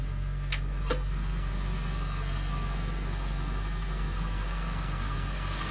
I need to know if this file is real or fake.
fake